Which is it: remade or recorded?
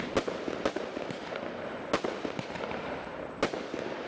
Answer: recorded